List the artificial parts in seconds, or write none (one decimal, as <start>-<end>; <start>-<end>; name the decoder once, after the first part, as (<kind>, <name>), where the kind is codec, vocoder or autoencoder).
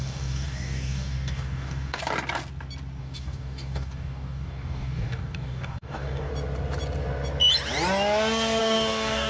0.0-2.0 (codec, DAC); 3.0-6.3; 8.6-9.3